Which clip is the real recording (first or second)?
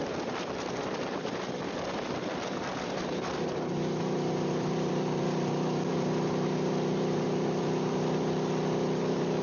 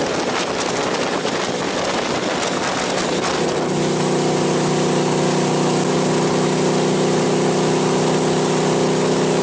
second